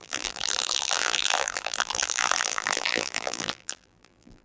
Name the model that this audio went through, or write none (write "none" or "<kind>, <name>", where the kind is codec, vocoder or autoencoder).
vocoder, BigVGAN v2